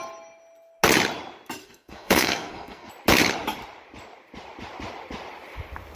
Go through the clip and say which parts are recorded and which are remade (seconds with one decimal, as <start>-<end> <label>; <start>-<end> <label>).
0.0-1.6 recorded; 1.6-2.9 remade; 2.9-6.0 recorded